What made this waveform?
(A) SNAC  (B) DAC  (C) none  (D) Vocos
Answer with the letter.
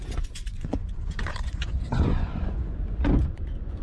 D